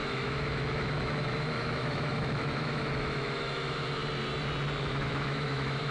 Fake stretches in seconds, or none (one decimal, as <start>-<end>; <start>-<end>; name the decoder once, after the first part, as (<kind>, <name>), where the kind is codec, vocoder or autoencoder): 0.0-4.0 (autoencoder, DAC-VAE); 4.8-5.9